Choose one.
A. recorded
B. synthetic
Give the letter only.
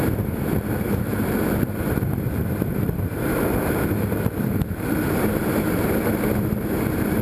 B